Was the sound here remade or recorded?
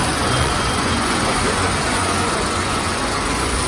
remade